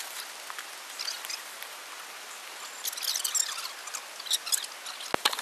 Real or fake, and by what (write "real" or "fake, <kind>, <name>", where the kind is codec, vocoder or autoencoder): real